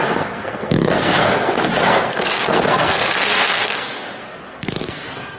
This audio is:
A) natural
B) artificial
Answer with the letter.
B